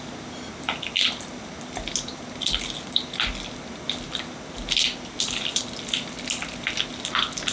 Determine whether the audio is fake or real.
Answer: real